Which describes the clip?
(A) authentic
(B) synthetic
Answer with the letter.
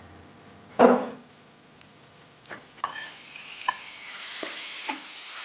A